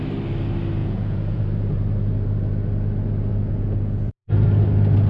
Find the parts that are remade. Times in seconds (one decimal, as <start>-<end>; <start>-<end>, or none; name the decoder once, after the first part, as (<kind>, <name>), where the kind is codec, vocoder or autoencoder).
0.8-1.4 (vocoder, Vocos); 3.3-4.3